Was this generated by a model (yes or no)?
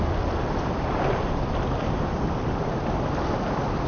no